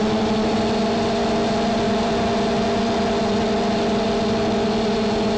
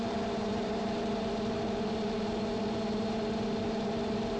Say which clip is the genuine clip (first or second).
first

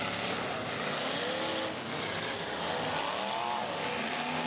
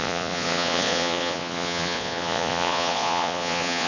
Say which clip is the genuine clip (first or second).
first